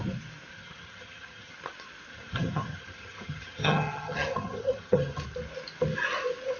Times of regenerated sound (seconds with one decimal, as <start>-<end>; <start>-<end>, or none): 0.5-1.5; 2.1-5.2